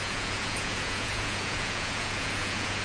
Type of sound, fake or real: fake